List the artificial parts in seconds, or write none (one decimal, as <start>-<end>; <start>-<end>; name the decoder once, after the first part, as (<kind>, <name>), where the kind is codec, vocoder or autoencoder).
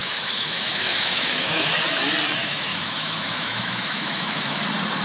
0.0-1.7 (autoencoder, DAC-VAE); 2.4-4.6